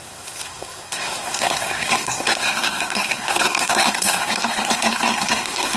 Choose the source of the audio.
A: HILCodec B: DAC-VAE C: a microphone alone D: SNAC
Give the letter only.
D